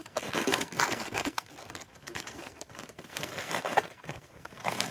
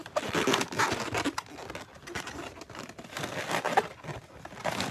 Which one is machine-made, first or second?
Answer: first